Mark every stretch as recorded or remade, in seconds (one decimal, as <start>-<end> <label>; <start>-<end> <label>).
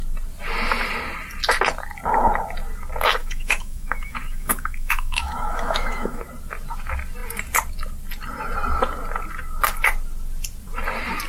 0.0-3.2 recorded; 3.2-6.2 remade; 6.2-11.3 recorded